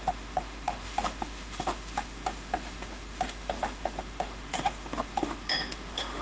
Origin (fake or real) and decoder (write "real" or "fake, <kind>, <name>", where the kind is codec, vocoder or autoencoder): fake, autoencoder, DAC-VAE